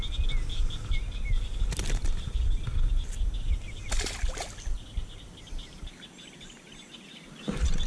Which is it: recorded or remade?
recorded